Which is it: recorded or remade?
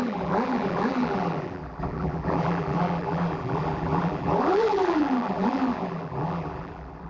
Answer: remade